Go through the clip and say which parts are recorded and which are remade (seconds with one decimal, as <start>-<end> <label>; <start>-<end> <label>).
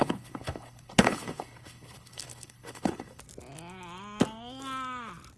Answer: 0.0-3.2 remade; 3.2-5.4 recorded